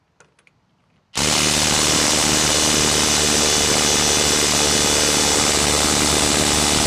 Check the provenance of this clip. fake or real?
real